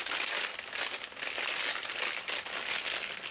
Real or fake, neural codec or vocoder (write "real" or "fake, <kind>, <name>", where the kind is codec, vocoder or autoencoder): real